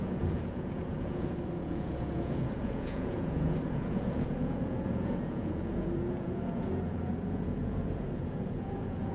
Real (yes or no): no